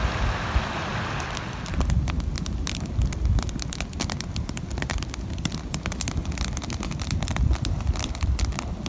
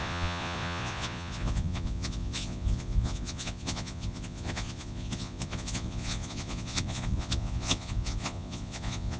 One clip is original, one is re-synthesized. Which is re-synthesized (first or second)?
second